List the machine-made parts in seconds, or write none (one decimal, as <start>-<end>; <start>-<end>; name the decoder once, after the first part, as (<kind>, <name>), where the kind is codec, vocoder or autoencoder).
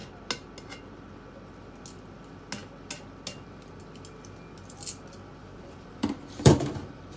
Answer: 5.4-7.2 (vocoder, BigVGAN v2)